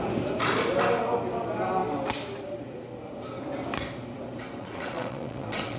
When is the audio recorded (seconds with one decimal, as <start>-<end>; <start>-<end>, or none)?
0.0-4.6